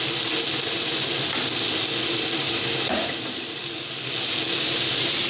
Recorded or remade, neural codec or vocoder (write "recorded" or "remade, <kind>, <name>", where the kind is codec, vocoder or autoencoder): recorded